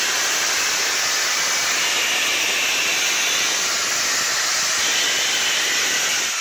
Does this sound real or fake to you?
real